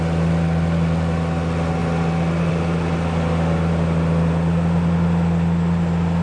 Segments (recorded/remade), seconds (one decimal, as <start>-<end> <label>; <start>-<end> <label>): 0.0-6.2 recorded